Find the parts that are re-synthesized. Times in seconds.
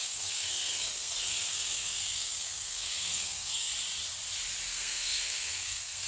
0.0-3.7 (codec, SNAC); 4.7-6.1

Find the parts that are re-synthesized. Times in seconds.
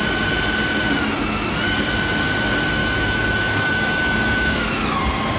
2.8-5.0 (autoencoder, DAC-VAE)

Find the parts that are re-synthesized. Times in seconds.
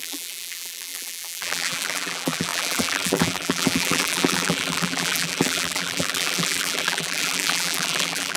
0.0-8.4 (vocoder, BigVGAN v2)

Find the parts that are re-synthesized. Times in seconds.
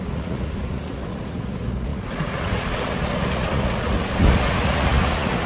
0.0-5.5 (vocoder, Vocos)